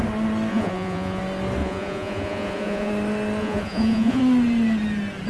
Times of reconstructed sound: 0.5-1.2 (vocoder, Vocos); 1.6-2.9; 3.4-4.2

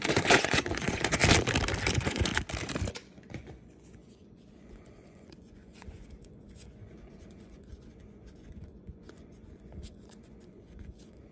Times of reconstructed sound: 0.0-1.2 (vocoder, Vocos); 1.9-2.3; 2.9-11.3

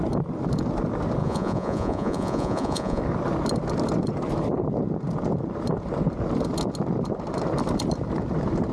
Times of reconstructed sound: 1.2-3.0 (vocoder, Vocos)

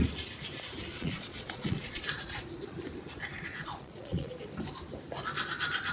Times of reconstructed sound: 0.9-2.0 (vocoder, Vocos); 3.5-4.3

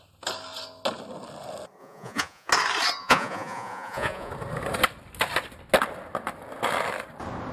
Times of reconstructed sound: 1.8-2.5 (vocoder, Vocos); 3.0-4.3